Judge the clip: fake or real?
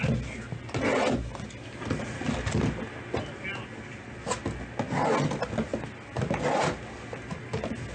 real